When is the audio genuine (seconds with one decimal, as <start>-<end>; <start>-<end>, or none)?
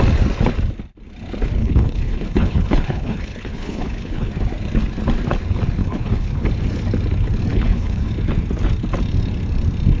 0.0-1.6; 4.3-5.8; 6.5-7.5; 8.1-10.0